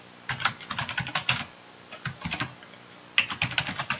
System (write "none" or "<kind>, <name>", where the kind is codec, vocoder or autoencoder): none